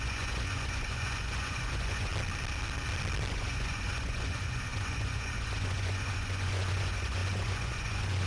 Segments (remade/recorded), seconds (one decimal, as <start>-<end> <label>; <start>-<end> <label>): 0.0-2.1 remade; 2.1-3.3 recorded; 3.3-8.3 remade